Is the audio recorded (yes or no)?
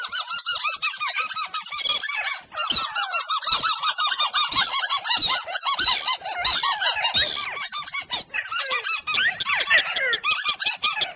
yes